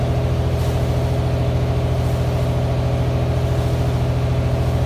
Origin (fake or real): real